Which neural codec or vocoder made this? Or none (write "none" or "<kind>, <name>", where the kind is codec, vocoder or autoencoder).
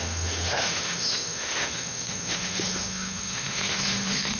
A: autoencoder, DAC-VAE